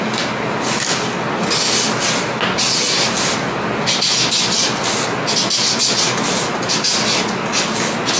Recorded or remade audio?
recorded